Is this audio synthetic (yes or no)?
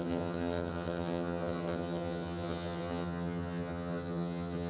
yes